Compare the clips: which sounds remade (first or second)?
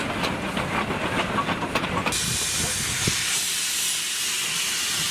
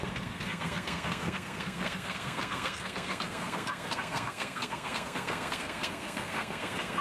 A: second